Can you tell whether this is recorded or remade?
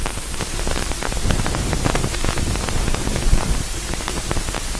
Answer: remade